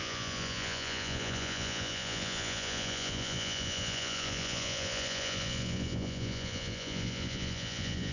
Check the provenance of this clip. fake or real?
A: fake